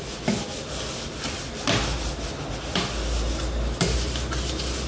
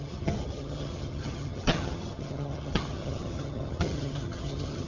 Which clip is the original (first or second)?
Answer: first